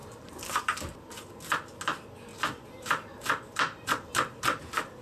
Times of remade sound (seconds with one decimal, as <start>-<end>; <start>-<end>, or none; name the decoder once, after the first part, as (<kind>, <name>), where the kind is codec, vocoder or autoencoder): 0.0-1.3 (vocoder, BigVGAN v2); 2.3-4.1